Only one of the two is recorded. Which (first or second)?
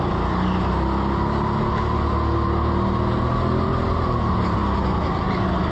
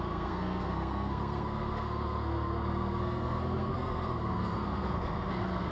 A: first